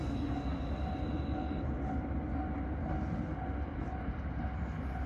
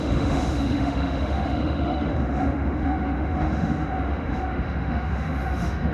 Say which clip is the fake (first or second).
second